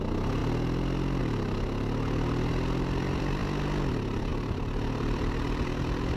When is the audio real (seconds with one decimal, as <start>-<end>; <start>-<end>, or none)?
0.4-1.2; 3.4-3.9

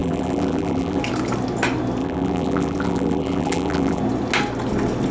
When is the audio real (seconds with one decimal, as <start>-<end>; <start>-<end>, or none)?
1.0-2.0; 4.0-5.1

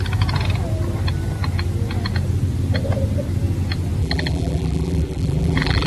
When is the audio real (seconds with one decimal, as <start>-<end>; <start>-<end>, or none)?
0.0-4.0

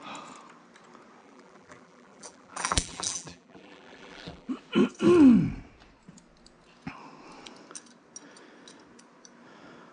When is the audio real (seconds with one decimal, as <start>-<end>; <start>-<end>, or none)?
0.0-1.2; 4.5-9.9

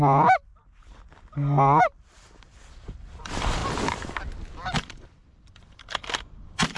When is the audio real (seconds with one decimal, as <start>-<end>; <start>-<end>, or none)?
0.5-1.8; 3.6-4.5

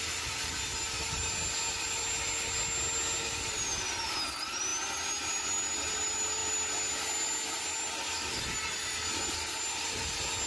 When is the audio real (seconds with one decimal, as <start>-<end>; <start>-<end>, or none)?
0.0-10.5

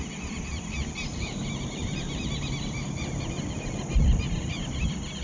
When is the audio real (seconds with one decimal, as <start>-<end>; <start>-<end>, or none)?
0.0-1.1; 4.2-5.2